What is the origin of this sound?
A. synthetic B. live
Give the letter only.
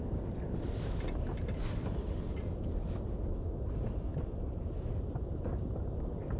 B